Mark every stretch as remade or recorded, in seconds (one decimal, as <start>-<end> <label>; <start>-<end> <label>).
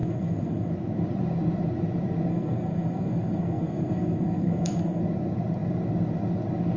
0.0-0.7 remade; 0.7-2.3 recorded; 2.3-5.0 remade; 5.0-6.8 recorded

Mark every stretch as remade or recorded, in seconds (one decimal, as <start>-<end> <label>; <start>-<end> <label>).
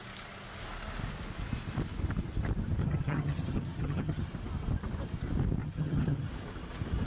0.0-2.8 recorded; 2.8-4.3 remade; 4.3-5.6 recorded; 5.6-6.3 remade; 6.3-7.1 recorded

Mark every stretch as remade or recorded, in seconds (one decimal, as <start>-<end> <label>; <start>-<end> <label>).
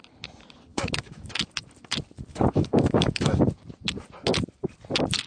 0.0-0.7 recorded; 0.7-1.3 remade; 1.3-2.3 recorded; 2.3-3.4 remade; 3.4-5.3 recorded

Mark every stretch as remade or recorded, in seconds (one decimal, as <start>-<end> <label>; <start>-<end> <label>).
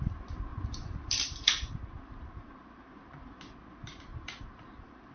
0.0-0.5 recorded; 0.5-3.4 remade; 3.4-4.1 recorded; 4.1-5.1 remade